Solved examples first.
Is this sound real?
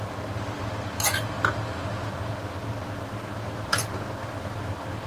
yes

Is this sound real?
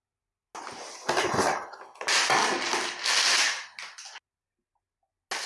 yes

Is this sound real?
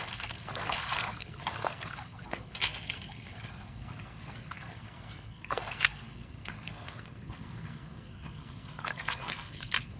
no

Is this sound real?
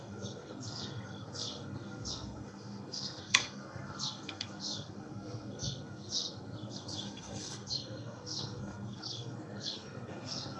no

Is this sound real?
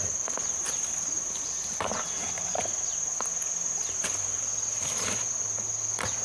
yes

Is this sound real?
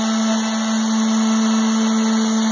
yes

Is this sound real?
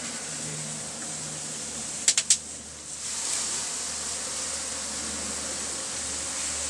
yes